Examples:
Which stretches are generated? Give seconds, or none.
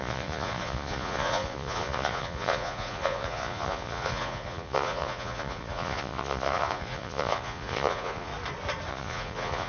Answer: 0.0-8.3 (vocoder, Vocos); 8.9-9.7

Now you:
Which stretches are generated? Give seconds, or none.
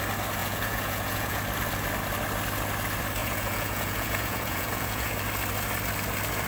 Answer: 0.4-1.4 (vocoder, Vocos); 3.2-5.1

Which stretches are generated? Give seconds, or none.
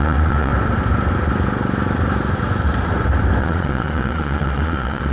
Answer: 0.0-0.5 (vocoder, Vocos); 3.4-5.1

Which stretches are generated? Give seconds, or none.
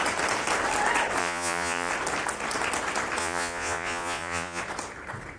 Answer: 1.2-1.9 (vocoder, Vocos); 3.2-4.6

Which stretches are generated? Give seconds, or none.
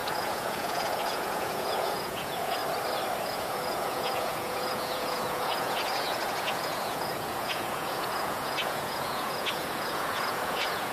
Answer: 0.0-2.6 (vocoder, Vocos); 3.2-10.9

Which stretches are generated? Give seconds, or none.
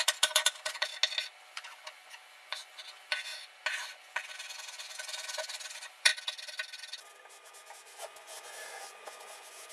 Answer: 0.0-0.9 (vocoder, Vocos); 1.4-3.3; 3.8-6.1; 8.0-9.7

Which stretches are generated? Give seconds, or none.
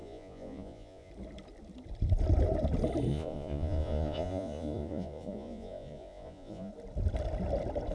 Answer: 0.0-1.1 (vocoder, Vocos); 3.1-6.7